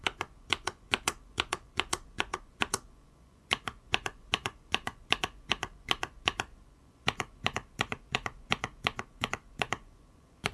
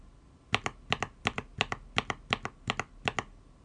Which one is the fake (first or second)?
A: first